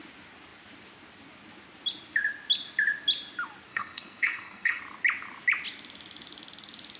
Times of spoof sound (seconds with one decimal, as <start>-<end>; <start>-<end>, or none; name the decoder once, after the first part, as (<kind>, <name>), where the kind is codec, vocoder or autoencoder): 3.7-4.8 (codec, SNAC)